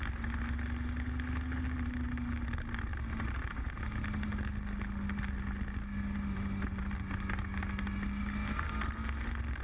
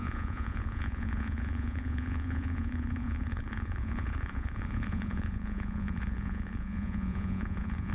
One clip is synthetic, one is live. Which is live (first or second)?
first